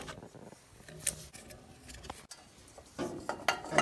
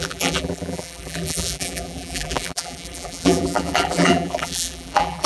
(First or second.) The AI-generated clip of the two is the second